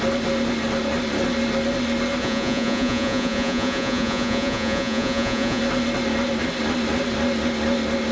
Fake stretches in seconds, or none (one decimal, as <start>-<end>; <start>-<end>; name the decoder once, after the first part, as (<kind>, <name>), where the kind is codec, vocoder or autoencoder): 2.2-5.6 (vocoder, Vocos)